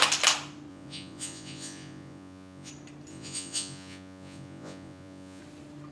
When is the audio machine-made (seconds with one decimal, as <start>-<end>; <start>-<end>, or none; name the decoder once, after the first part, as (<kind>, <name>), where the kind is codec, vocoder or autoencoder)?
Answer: 0.7-2.7 (vocoder, Vocos); 3.1-5.4

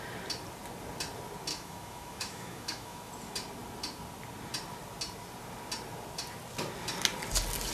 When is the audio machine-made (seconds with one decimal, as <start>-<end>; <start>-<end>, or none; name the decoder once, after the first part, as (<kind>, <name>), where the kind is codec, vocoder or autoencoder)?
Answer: 1.5-3.1 (autoencoder, DAC-VAE)

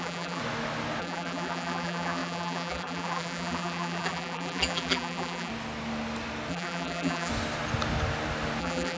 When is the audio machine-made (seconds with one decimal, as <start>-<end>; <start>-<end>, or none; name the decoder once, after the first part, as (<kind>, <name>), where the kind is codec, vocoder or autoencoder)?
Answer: 0.0-0.4 (vocoder, BigVGAN v2); 1.0-5.5; 6.5-7.3; 8.6-9.0

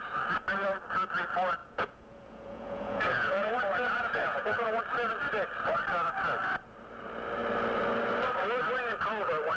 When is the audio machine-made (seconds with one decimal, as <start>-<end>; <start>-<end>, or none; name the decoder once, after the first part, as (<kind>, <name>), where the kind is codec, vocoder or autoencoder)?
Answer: 1.6-4.8 (vocoder, Vocos)

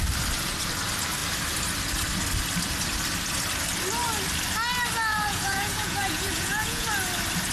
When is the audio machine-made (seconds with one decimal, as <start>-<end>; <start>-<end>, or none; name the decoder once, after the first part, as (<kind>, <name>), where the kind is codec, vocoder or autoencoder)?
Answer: 5.1-6.9 (vocoder, Vocos)